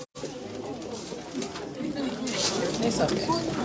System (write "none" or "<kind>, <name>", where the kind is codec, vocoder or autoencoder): none